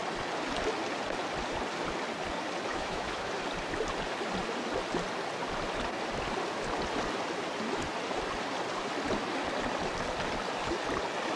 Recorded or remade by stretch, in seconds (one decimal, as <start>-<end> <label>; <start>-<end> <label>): 0.0-2.7 recorded; 2.7-3.3 remade; 3.3-11.4 recorded